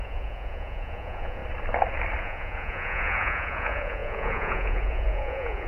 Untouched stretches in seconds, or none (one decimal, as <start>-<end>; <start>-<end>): 1.4-2.2